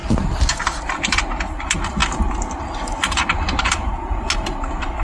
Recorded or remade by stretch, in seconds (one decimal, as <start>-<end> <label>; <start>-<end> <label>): 0.0-1.5 recorded; 1.5-2.0 remade; 2.0-2.6 recorded; 2.6-5.0 remade